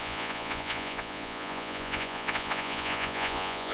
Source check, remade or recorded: remade